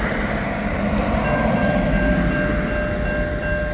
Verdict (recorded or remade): recorded